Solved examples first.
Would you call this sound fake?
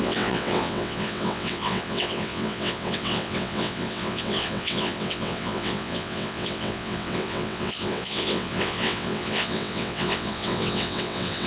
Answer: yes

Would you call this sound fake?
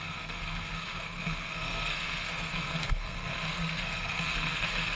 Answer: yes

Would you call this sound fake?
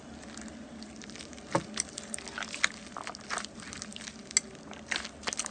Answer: no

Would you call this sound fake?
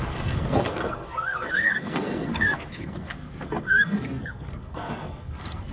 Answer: yes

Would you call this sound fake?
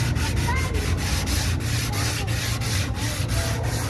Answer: no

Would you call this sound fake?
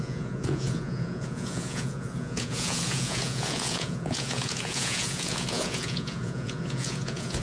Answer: yes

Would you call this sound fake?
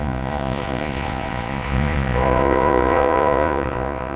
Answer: yes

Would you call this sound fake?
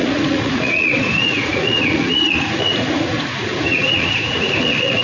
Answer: yes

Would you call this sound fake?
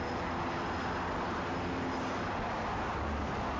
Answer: no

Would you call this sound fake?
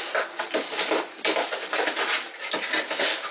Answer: no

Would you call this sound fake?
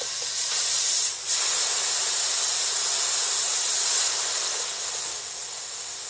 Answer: no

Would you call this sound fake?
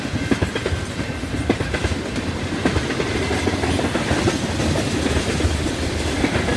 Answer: no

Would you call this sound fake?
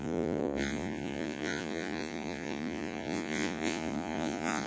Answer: yes